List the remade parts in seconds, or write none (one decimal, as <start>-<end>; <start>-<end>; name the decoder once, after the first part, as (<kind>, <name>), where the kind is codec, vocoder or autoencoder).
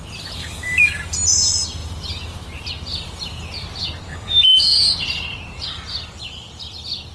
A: 0.4-1.0 (codec, DAC); 4.1-4.9